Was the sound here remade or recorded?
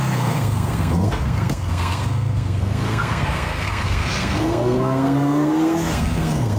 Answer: remade